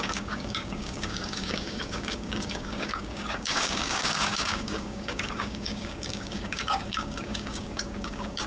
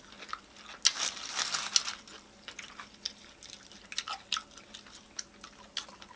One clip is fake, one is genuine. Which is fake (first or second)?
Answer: first